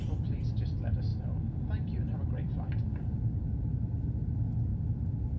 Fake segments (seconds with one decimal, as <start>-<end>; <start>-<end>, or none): 1.1-4.3; 4.7-5.4